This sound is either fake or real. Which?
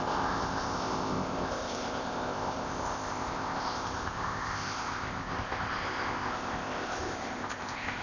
fake